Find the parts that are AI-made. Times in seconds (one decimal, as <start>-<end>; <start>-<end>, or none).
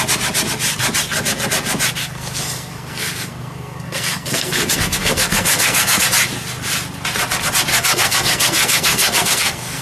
2.0-6.0; 7.7-9.8